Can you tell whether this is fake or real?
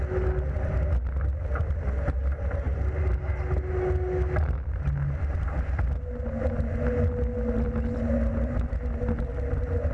real